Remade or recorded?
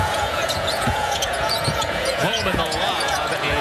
remade